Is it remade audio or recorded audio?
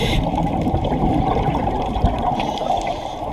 remade